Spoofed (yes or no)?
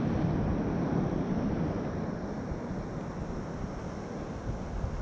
no